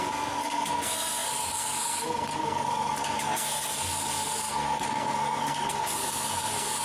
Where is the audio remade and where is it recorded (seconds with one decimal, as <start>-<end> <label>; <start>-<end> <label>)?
0.0-6.8 remade